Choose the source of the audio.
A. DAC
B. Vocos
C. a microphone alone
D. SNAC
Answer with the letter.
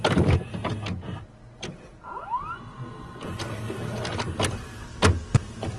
C